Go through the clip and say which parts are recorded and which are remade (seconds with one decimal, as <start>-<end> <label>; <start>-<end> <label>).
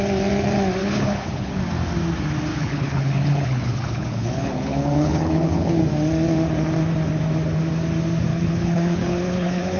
0.0-0.8 recorded; 0.8-1.6 remade; 1.6-2.5 recorded; 2.5-5.8 remade; 5.8-8.3 recorded; 8.3-9.8 remade